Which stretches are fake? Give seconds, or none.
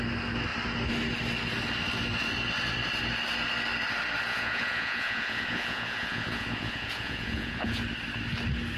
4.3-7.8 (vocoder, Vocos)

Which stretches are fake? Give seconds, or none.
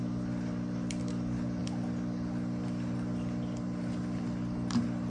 none